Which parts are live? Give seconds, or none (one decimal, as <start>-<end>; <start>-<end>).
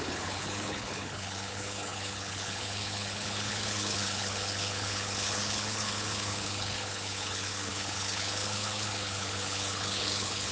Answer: none